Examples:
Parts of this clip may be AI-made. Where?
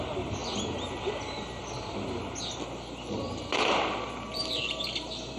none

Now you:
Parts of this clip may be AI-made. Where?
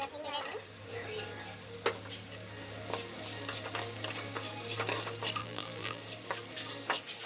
5.4-6.0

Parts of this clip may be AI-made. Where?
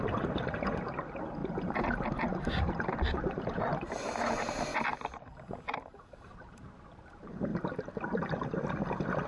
0.0-3.7; 4.2-4.7; 5.2-7.5; 8.7-9.3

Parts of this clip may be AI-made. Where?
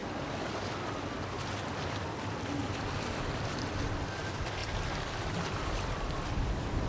none